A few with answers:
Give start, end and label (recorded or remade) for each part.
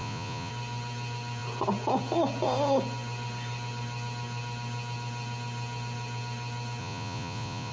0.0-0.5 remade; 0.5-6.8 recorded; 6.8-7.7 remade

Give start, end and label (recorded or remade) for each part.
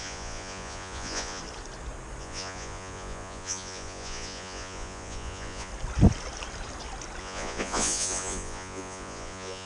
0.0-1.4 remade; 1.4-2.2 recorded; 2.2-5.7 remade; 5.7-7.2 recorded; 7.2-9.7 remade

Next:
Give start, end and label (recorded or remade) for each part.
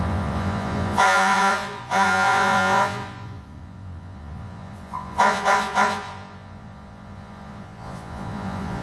0.0-8.8 remade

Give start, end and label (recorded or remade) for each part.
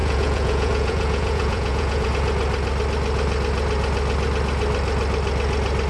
0.0-2.1 remade; 2.1-5.9 recorded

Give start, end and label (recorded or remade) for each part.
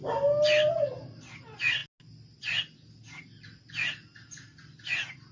0.0-5.3 recorded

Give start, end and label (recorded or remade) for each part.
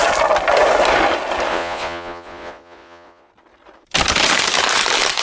0.0-1.5 recorded; 1.5-3.3 remade; 3.3-5.2 recorded